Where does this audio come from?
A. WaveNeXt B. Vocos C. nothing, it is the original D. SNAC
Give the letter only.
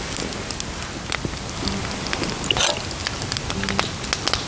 C